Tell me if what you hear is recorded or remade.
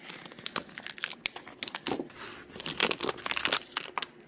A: recorded